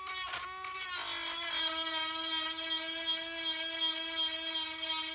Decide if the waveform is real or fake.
real